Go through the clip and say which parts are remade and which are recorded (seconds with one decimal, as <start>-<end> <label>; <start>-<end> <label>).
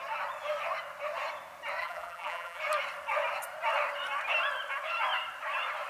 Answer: 0.0-1.8 recorded; 1.8-2.6 remade; 2.6-5.9 recorded